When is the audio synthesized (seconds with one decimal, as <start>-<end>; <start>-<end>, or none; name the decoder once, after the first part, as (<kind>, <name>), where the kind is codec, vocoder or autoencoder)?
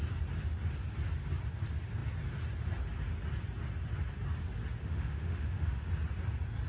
4.8-5.9 (autoencoder, DAC-VAE)